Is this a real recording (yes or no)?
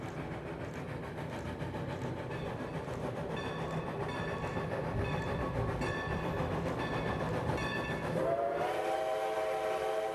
yes